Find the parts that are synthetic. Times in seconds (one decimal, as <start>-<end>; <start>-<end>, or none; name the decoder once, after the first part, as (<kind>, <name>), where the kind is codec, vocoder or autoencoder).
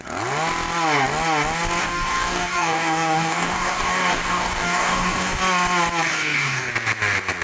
1.8-5.4 (codec, DAC); 6.1-6.7